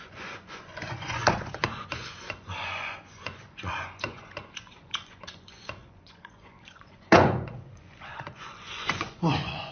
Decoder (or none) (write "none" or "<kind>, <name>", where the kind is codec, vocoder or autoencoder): vocoder, Vocos